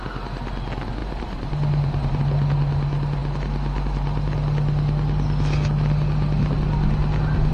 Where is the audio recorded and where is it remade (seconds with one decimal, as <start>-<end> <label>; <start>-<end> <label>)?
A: 0.0-1.0 recorded; 1.0-2.2 remade; 2.2-7.5 recorded